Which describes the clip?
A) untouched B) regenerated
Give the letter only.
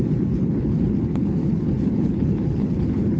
B